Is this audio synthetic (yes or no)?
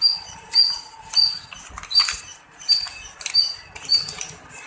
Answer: no